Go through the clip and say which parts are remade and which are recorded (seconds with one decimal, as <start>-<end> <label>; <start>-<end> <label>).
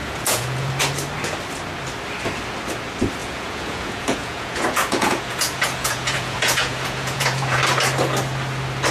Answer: 0.0-0.7 remade; 0.7-3.2 recorded; 3.2-7.6 remade; 7.6-8.9 recorded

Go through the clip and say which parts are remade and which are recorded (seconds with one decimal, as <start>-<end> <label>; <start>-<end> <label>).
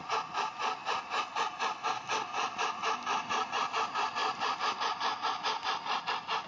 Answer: 0.0-6.5 recorded